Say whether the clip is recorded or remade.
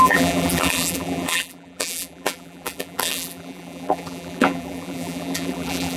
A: remade